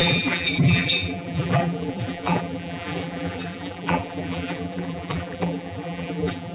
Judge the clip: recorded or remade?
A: remade